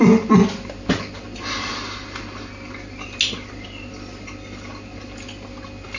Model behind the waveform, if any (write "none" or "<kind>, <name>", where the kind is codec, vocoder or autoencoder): none